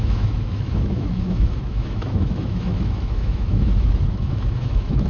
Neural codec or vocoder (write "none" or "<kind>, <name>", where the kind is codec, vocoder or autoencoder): autoencoder, DAC-VAE